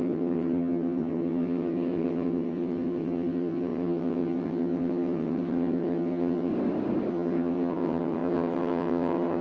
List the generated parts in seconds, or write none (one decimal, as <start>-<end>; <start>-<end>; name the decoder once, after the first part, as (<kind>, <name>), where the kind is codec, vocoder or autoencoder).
0.0-6.5 (vocoder, HiFi-GAN); 7.1-9.4